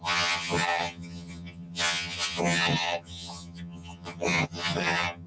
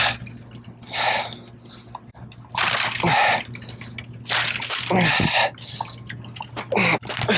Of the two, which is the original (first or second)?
second